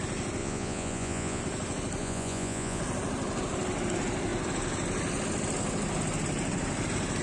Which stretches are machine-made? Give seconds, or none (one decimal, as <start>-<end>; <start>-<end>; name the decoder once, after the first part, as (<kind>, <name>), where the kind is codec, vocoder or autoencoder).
0.4-1.4 (vocoder, Vocos); 2.0-2.8